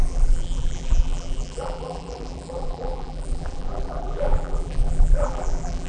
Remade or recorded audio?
remade